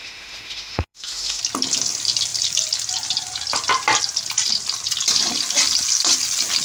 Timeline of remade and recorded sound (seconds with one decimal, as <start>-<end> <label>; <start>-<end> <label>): 0.0-1.4 remade; 1.4-6.6 recorded